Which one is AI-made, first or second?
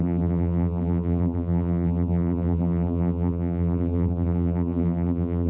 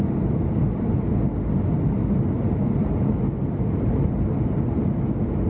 first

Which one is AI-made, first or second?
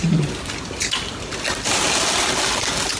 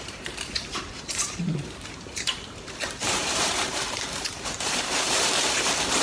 second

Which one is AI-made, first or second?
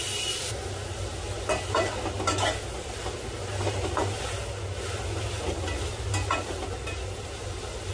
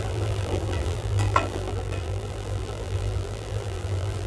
second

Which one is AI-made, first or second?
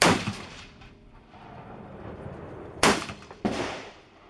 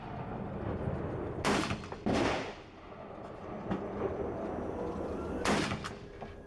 first